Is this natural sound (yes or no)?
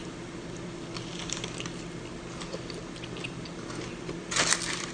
yes